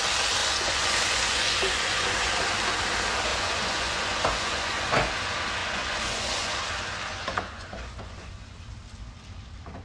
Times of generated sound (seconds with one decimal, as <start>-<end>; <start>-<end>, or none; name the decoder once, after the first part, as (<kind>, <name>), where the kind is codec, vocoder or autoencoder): 0.4-2.3 (vocoder, Vocos); 3.3-5.1; 5.6-6.6; 7.1-8.4